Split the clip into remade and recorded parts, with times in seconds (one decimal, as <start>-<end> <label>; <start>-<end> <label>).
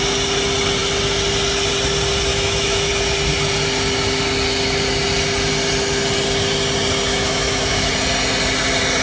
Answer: 0.0-2.3 recorded; 2.3-2.9 remade; 2.9-7.1 recorded; 7.1-7.9 remade; 7.9-9.0 recorded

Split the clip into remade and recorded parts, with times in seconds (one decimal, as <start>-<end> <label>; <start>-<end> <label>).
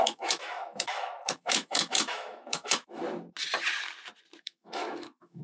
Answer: 0.0-3.0 remade; 3.0-4.4 recorded; 4.4-5.4 remade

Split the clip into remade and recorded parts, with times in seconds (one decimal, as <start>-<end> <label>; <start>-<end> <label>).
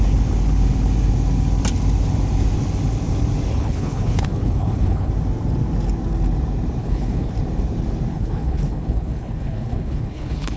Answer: 0.0-3.5 recorded; 3.5-5.1 remade; 5.1-6.8 recorded; 6.8-7.3 remade; 7.3-8.1 recorded; 8.1-10.6 remade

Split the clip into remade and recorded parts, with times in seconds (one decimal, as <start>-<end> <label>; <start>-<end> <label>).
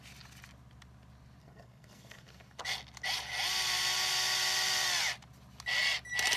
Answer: 0.0-1.4 recorded; 1.4-2.6 remade; 2.6-6.4 recorded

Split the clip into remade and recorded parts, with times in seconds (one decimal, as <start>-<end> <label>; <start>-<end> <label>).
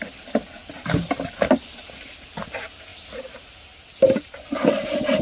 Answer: 0.0-2.9 remade; 2.9-4.0 recorded; 4.0-5.2 remade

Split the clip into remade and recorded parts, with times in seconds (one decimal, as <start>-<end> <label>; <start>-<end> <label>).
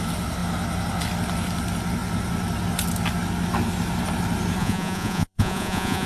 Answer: 0.0-4.6 recorded; 4.6-6.1 remade